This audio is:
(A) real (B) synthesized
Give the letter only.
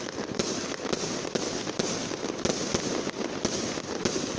A